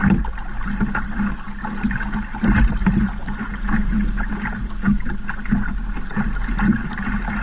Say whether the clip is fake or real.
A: real